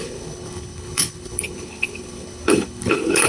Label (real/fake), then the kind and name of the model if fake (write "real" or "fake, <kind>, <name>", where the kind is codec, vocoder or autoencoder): fake, codec, HILCodec